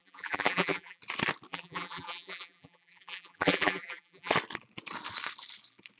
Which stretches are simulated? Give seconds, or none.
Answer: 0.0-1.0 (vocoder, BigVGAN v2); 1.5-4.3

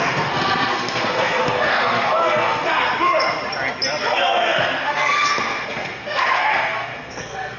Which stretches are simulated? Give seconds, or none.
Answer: 0.0-3.2 (codec, SNAC); 4.0-7.6

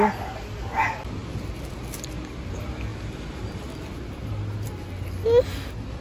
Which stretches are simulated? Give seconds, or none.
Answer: none

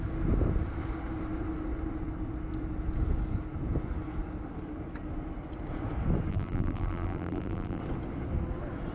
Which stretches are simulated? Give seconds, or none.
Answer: 6.3-7.8 (vocoder, BigVGAN v2)

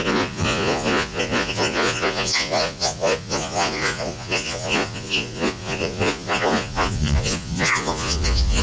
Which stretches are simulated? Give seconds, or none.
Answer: 0.0-8.6 (vocoder, Vocos)

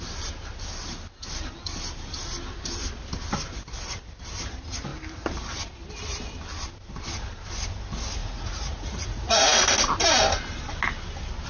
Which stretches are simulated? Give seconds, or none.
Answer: 8.2-9.6 (vocoder, Vocos)